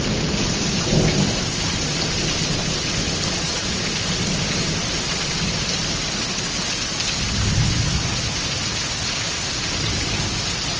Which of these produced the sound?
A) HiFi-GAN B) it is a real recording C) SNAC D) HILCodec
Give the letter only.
B